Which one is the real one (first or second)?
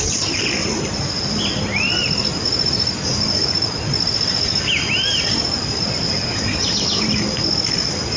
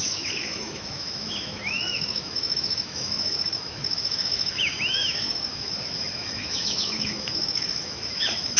first